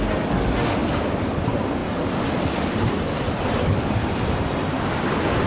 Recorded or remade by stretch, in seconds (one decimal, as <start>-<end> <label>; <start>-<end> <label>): 0.0-1.8 recorded; 1.8-5.1 remade; 5.1-5.5 recorded